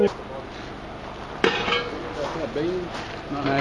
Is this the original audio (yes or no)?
yes